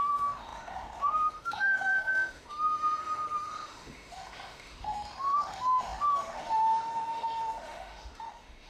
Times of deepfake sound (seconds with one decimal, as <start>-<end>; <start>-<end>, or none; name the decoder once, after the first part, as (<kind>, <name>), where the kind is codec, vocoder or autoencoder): 0.0-8.7 (autoencoder, DAC-VAE)